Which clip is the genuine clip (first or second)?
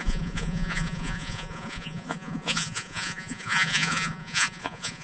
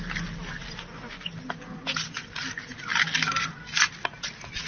second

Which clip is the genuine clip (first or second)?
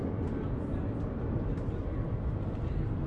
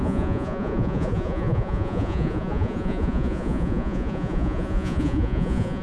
first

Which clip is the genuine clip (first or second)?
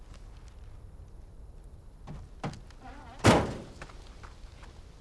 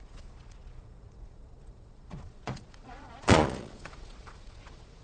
first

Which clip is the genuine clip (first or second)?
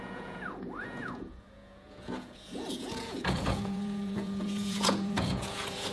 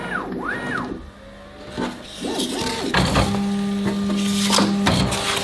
second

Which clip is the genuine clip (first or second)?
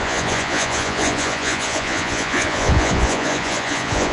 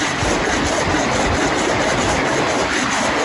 second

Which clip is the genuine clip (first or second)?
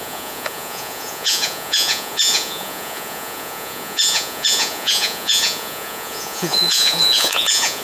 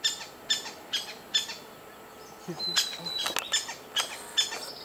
second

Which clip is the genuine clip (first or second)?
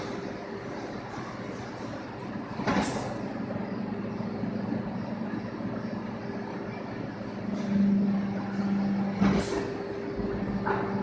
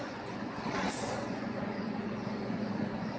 first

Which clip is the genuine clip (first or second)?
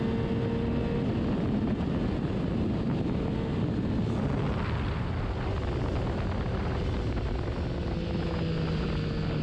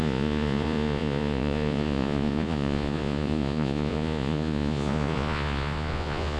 first